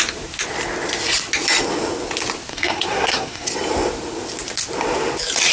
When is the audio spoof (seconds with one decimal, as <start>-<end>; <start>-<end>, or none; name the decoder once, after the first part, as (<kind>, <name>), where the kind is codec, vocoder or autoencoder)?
2.5-3.5 (codec, SNAC)